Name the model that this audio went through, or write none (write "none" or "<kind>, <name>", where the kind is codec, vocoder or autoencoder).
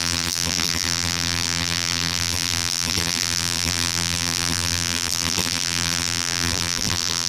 vocoder, BigVGAN v2